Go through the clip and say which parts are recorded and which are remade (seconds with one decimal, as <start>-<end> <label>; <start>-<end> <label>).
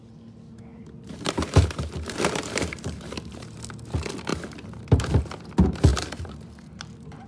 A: 0.0-0.7 recorded; 0.7-3.6 remade; 3.6-4.3 recorded; 4.3-5.2 remade; 5.2-5.9 recorded; 5.9-7.3 remade